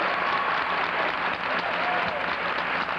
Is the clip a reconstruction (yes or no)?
no